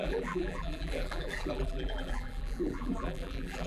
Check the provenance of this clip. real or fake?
fake